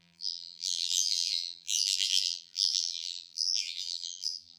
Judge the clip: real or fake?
fake